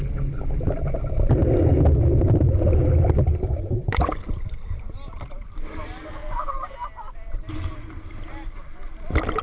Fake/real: real